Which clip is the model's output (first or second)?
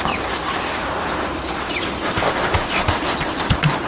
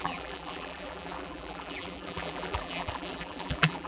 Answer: second